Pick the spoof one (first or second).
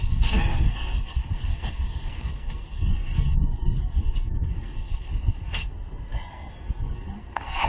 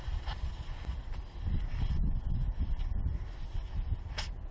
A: first